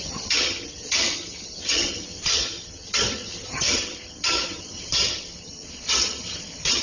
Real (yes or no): no